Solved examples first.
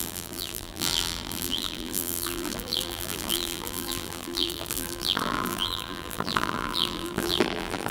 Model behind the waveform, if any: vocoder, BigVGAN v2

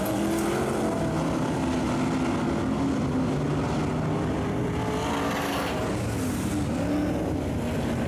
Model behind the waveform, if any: none